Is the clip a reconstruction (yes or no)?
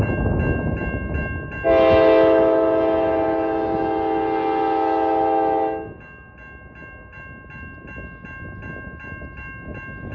no